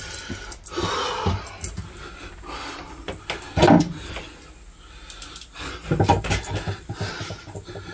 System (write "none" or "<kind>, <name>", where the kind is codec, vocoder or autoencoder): none